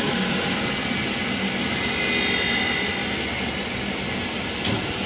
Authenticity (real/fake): real